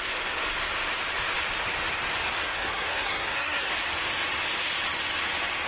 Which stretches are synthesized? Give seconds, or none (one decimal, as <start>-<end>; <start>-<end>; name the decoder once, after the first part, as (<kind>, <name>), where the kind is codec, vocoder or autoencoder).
2.4-3.7 (codec, SNAC)